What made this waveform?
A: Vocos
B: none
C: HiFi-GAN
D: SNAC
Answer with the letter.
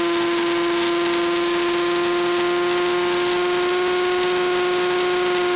B